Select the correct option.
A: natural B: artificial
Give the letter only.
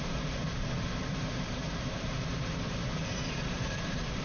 B